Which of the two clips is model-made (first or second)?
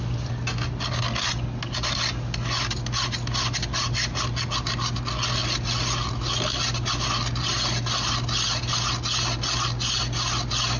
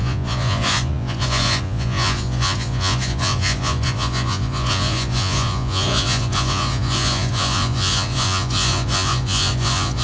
second